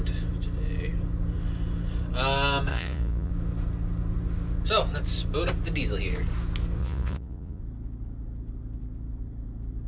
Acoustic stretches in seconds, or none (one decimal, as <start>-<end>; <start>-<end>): 0.0-2.7; 3.3-6.8; 7.6-9.9